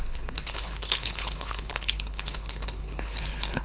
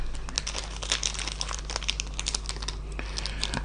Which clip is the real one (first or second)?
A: second